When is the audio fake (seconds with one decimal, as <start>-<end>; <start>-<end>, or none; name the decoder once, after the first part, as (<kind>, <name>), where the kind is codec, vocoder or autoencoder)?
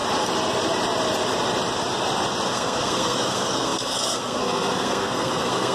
2.5-5.7 (codec, SNAC)